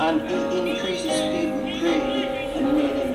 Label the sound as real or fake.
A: real